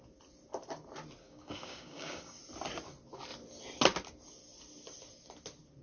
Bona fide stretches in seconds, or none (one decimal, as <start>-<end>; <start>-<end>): 0.0-1.2; 2.4-5.8